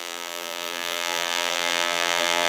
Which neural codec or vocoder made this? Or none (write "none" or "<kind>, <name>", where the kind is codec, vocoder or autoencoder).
vocoder, BigVGAN v2